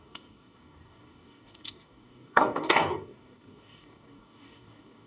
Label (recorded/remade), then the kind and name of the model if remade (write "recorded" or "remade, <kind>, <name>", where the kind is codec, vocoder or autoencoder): remade, codec, DAC